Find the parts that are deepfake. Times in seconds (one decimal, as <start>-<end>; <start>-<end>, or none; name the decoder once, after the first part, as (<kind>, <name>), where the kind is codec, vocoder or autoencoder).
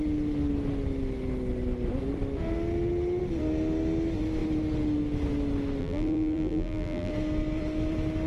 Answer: 5.8-7.1 (vocoder, BigVGAN v2)